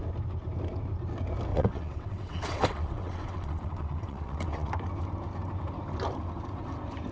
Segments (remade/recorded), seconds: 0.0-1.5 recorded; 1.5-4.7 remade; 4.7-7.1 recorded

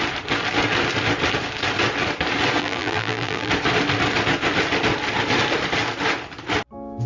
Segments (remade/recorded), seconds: 0.0-2.6 recorded; 2.6-3.5 remade; 3.5-7.1 recorded

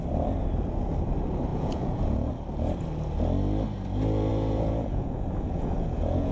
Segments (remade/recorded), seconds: 0.0-1.5 recorded; 1.5-2.3 remade; 2.3-4.3 recorded; 4.3-6.3 remade

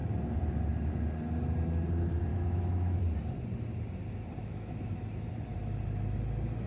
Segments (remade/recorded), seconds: 0.0-2.3 recorded; 2.3-3.0 remade; 3.0-4.4 recorded; 4.4-5.0 remade; 5.0-6.7 recorded

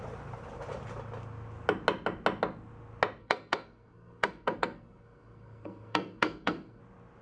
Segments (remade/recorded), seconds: 0.0-3.2 recorded; 3.2-6.8 remade; 6.8-7.2 recorded